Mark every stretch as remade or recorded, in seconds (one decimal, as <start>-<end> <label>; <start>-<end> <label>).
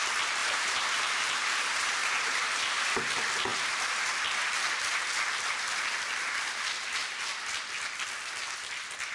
0.0-0.4 recorded; 0.4-2.8 remade; 2.8-3.5 recorded; 3.5-4.1 remade; 4.1-9.1 recorded